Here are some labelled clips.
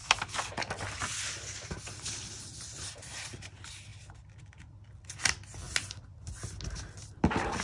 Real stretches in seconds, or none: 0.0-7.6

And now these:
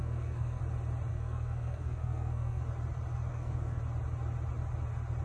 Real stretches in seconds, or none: 0.6-1.1; 2.6-3.3; 3.8-5.2

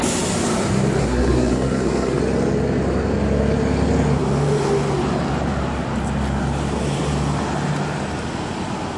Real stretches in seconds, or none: 0.0-1.0; 2.2-9.0

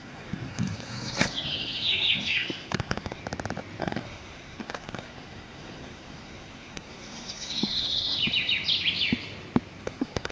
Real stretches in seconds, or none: 3.2-3.8; 8.2-9.8

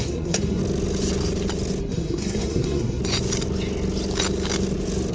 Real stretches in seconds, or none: 0.6-1.8; 3.0-5.1

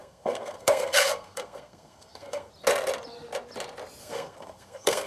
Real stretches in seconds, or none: 2.5-4.0

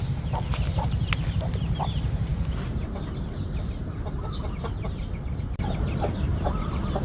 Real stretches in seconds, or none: 0.0-7.0

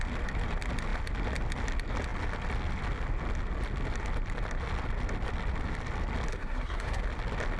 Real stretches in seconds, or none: 0.0-6.3; 7.0-7.6